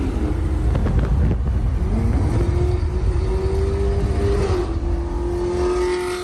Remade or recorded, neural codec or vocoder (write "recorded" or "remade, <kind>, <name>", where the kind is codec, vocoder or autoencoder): recorded